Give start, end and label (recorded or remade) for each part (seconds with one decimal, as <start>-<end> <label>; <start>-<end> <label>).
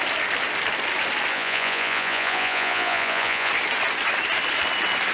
0.0-1.3 recorded; 1.3-3.5 remade; 3.5-5.1 recorded